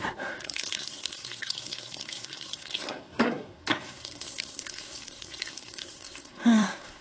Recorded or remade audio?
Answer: remade